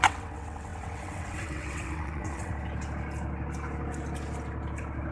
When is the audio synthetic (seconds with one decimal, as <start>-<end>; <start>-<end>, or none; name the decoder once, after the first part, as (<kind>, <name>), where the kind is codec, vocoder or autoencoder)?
0.0-2.5 (vocoder, WaveNeXt)